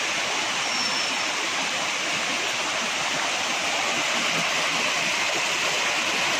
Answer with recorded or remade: recorded